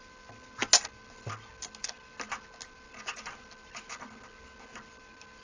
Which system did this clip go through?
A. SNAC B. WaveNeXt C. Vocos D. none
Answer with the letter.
D